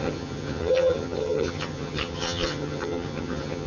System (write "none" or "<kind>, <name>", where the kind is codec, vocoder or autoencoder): vocoder, HiFi-GAN